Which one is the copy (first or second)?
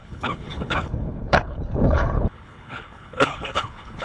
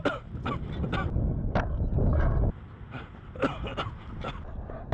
first